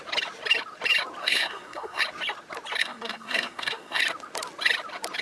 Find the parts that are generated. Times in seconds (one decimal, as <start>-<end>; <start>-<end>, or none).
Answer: 1.2-2.0; 2.8-4.0